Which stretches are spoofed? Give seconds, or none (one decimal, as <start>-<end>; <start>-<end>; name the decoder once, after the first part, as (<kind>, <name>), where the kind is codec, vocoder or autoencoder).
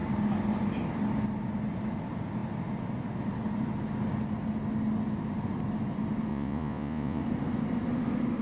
6.3-7.2 (vocoder, Vocos)